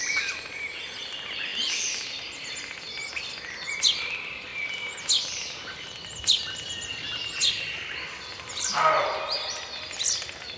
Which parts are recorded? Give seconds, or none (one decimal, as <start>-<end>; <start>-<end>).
0.0-10.6